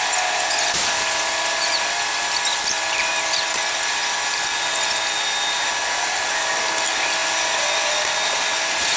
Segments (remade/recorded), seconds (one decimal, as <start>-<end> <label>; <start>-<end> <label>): 0.0-9.0 recorded